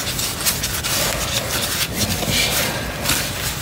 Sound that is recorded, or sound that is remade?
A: recorded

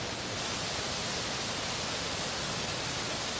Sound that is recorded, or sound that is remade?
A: recorded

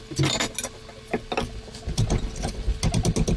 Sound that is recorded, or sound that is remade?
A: recorded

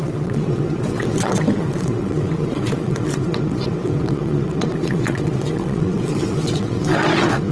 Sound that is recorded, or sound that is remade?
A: remade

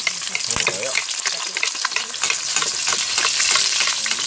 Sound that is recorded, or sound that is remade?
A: recorded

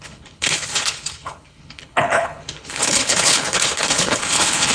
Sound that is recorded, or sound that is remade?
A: remade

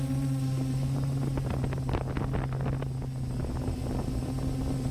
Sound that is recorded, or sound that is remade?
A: recorded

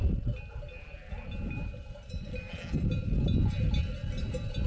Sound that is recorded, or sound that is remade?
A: recorded